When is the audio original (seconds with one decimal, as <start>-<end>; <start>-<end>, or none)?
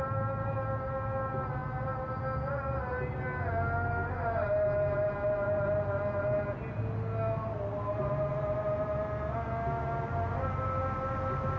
0.0-11.6